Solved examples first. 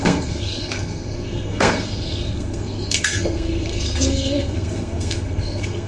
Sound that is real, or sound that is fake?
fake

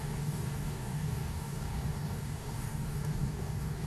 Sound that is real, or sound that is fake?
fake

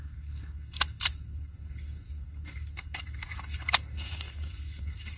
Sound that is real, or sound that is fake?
fake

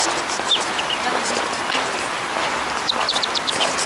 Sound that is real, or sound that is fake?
real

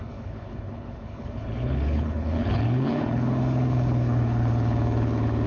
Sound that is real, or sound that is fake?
fake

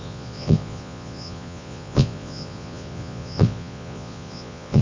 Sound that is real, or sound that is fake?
fake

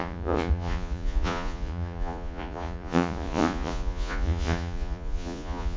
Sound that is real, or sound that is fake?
fake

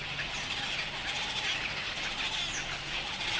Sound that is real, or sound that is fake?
real